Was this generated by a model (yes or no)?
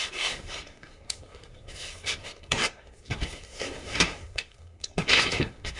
yes